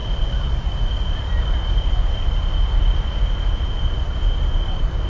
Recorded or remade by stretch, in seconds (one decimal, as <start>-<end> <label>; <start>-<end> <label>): 0.0-5.1 recorded